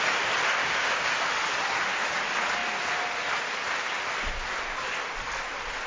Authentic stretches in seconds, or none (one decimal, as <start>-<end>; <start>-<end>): 0.0-0.6; 1.1-5.9